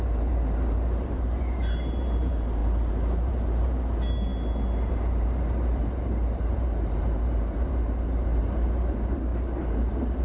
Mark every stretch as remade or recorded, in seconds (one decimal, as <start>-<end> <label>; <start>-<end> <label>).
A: 0.0-4.3 remade; 4.3-4.9 recorded; 4.9-10.2 remade